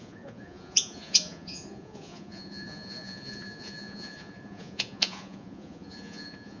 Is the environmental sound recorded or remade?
remade